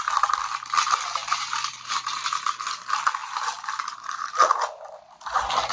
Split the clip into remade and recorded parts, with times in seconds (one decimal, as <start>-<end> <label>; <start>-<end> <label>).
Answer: 0.0-1.2 recorded; 1.2-2.6 remade; 2.6-5.7 recorded